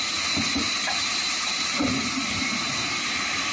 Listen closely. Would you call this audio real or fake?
fake